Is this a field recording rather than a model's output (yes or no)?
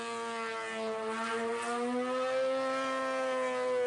yes